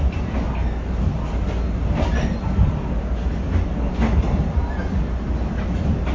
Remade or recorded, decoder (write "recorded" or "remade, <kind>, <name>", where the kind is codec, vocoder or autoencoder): recorded